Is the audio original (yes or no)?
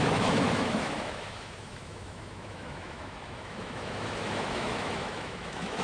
no